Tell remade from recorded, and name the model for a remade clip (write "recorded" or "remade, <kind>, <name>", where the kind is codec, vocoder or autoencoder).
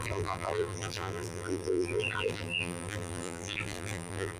remade, vocoder, BigVGAN v2